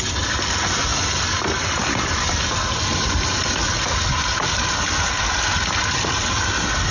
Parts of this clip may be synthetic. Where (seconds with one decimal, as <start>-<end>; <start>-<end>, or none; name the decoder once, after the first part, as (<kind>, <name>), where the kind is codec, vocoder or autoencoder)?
none

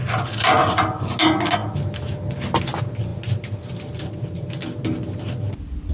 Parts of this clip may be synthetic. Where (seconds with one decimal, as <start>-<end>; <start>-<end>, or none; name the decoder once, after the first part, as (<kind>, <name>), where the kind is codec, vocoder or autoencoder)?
none

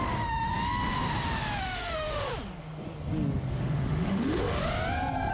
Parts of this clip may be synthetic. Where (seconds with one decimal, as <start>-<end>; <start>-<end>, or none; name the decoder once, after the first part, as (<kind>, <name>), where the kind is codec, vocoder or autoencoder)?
0.0-0.5 (autoencoder, DAC-VAE); 1.6-2.3; 3.6-4.6

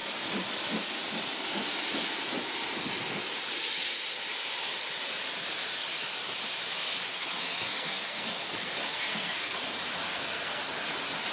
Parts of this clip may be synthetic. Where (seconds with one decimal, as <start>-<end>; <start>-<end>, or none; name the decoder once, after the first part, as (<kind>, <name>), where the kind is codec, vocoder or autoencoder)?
7.1-9.6 (codec, SNAC); 10.1-10.6

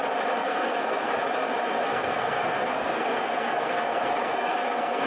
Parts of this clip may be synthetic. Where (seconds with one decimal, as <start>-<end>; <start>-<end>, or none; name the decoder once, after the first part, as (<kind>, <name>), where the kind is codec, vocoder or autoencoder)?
0.4-1.1 (codec, SNAC); 1.9-5.1

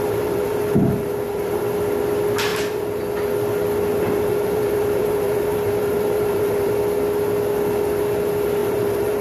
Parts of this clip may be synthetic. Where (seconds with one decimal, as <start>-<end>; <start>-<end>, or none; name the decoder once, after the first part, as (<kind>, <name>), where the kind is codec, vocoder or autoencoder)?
0.0-1.6 (vocoder, BigVGAN v2); 2.5-3.0; 3.9-6.7; 8.6-9.2

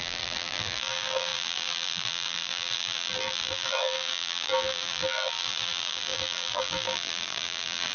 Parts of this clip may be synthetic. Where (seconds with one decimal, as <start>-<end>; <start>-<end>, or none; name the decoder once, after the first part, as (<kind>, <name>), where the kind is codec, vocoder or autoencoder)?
0.0-7.9 (vocoder, BigVGAN v2)